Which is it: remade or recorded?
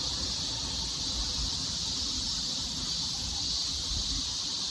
recorded